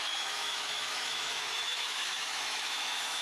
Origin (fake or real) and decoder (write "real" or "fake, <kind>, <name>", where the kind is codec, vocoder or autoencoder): fake, autoencoder, DAC-VAE